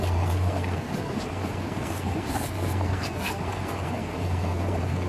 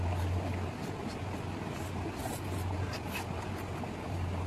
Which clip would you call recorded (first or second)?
second